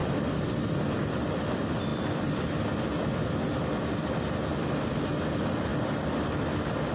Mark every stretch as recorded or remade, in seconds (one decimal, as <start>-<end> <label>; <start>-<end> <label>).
0.0-6.9 recorded